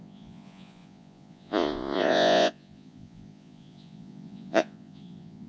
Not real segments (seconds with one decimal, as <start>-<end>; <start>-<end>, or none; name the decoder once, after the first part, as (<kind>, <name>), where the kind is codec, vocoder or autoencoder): 0.0-5.5 (vocoder, Vocos)

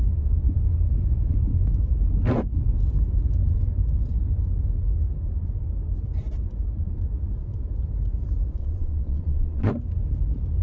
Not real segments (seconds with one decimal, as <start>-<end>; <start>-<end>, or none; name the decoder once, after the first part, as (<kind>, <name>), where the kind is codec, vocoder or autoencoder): 8.6-9.7 (vocoder, Vocos)